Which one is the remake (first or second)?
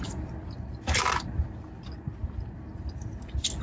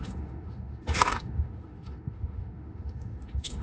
second